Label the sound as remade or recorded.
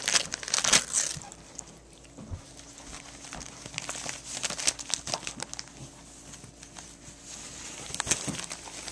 recorded